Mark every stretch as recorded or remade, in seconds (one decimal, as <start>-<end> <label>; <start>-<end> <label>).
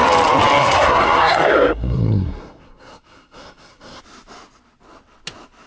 0.0-0.6 recorded; 0.6-4.0 remade; 4.0-5.7 recorded